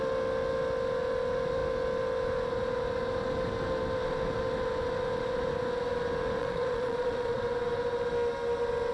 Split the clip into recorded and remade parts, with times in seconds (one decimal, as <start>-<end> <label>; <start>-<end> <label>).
0.0-6.4 recorded; 6.4-7.4 remade; 7.4-8.9 recorded

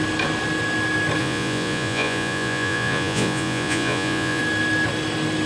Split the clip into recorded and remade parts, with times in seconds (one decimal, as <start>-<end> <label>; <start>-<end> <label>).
0.0-1.2 recorded; 1.2-4.4 remade; 4.4-5.5 recorded